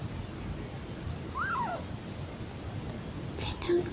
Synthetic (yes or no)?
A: no